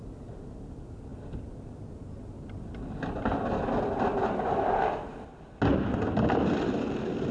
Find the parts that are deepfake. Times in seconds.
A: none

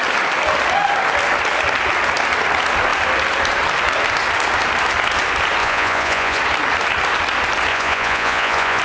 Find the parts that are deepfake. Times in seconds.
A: 5.6-6.4; 7.7-8.8

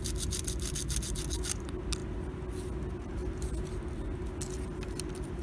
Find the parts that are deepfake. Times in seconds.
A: none

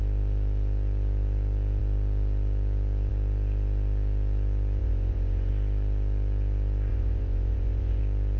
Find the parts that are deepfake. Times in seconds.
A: 4.8-5.5; 6.9-8.0

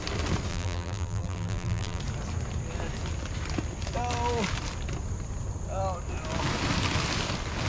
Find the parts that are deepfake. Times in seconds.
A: 0.5-2.0